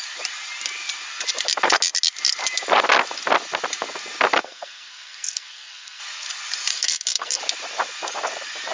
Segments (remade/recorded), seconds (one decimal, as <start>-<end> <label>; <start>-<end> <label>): 0.0-4.4 recorded; 4.4-6.0 remade; 6.0-6.7 recorded; 6.7-7.4 remade; 7.4-8.7 recorded